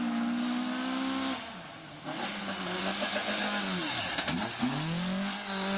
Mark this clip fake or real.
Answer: real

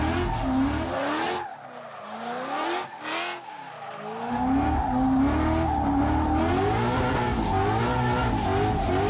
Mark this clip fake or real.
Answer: real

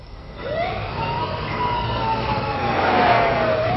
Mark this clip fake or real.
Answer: fake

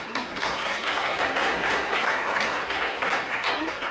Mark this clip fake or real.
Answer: fake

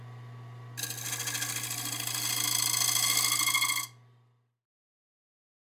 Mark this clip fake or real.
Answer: real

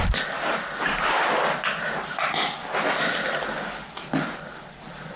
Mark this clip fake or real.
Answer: real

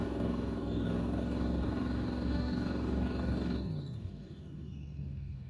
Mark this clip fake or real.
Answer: fake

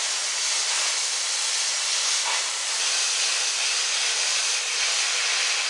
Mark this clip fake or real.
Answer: real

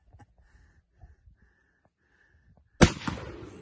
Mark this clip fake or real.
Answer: real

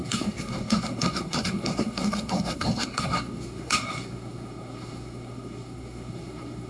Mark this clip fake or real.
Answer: fake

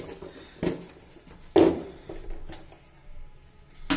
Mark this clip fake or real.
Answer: real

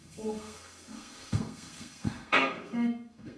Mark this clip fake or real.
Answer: fake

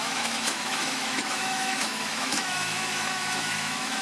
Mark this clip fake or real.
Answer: fake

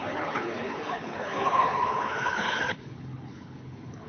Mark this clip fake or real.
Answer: fake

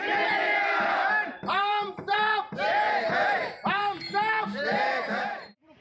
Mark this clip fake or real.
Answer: fake